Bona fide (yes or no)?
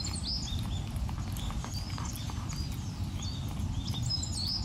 yes